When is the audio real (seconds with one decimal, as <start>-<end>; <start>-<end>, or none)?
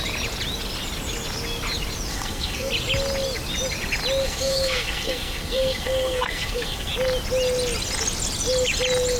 0.0-2.1; 2.7-4.2; 6.9-9.2